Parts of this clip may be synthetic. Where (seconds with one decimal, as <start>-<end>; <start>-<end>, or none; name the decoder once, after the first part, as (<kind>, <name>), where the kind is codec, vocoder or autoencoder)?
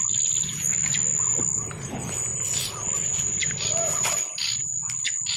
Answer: none